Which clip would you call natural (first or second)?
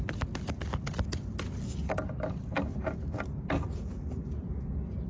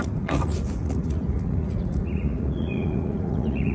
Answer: first